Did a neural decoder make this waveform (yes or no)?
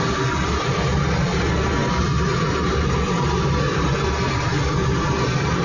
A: no